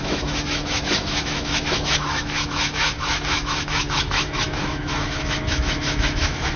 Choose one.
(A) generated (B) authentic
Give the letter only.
A